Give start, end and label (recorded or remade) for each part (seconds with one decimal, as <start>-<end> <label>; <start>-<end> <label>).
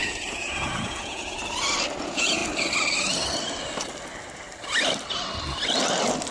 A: 0.0-1.4 remade; 1.4-2.0 recorded; 2.0-2.4 remade; 2.4-6.3 recorded